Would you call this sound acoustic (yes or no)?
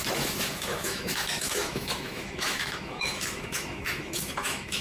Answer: no